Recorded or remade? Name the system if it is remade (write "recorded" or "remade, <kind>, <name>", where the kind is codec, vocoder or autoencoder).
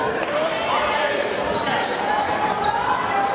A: recorded